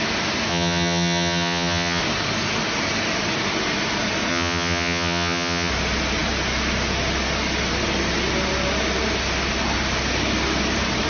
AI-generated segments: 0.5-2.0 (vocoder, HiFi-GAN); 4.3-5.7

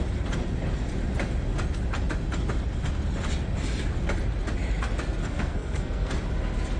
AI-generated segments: 5.2-6.1 (codec, SNAC)

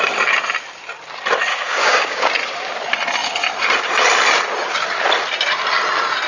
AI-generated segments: 1.5-2.3 (codec, DAC)

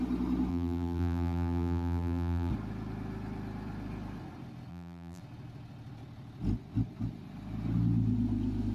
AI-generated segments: 0.5-2.5 (vocoder, BigVGAN v2); 4.7-5.2

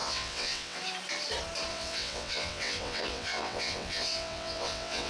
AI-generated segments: 0.0-0.8 (vocoder, WaveNeXt); 1.7-5.1

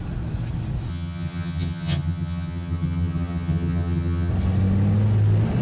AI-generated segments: 0.9-4.3 (vocoder, HiFi-GAN)

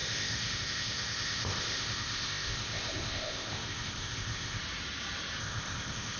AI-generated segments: 0.0-4.6 (codec, ZipCodec); 5.4-6.2